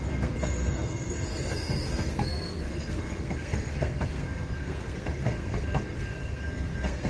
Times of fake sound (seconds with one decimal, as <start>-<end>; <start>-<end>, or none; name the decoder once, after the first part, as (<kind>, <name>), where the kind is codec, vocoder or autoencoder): 0.0-7.1 (codec, SNAC)